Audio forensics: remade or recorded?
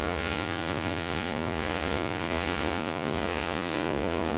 remade